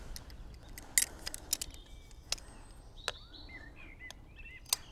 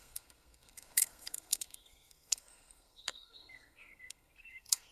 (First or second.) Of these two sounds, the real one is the first